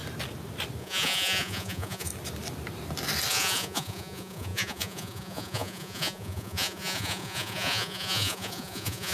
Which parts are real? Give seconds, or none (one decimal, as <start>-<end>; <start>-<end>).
0.0-0.8; 2.1-3.3